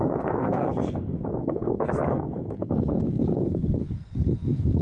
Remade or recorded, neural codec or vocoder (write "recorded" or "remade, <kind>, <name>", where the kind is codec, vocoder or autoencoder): remade, codec, SNAC